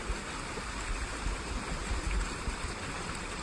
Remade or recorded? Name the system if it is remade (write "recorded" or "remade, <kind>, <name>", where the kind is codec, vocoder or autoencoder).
recorded